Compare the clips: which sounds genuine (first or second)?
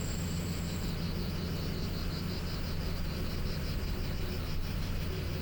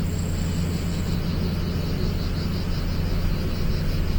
second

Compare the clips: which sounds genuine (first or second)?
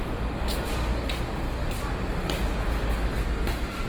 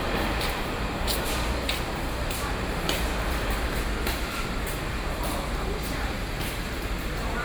first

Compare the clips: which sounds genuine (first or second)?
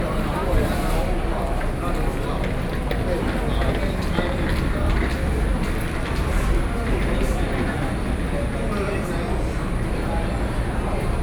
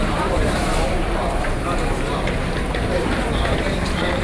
first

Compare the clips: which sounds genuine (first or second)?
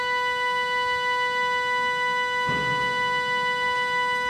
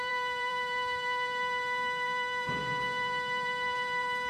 first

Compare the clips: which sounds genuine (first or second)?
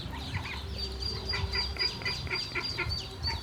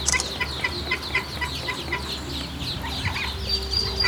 second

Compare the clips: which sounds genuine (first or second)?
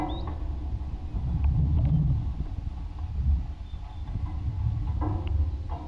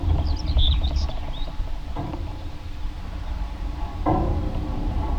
first